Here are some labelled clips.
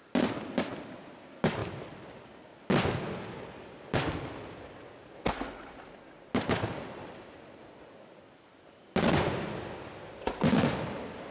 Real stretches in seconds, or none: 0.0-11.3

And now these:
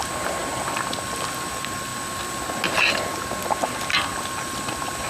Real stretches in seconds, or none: 0.0-5.1